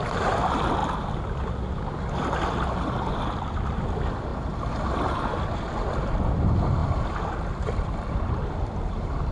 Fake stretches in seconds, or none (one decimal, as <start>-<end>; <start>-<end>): none